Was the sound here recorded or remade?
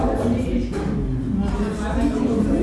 recorded